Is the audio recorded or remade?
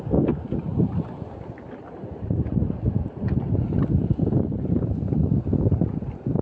recorded